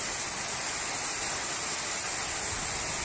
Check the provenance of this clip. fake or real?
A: real